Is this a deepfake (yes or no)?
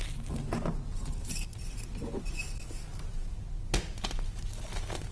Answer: no